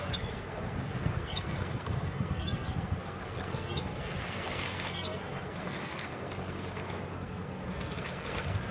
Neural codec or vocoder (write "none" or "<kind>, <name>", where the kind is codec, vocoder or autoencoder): codec, SNAC